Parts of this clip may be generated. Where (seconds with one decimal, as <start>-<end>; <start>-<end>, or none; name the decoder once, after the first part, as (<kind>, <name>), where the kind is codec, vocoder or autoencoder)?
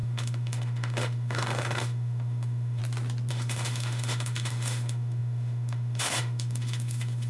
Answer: 0.0-2.8 (autoencoder, DAC-VAE); 3.3-7.3